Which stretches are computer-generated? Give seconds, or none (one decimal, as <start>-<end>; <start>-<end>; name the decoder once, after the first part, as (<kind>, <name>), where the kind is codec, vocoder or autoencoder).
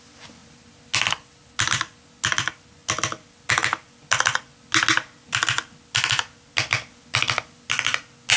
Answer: none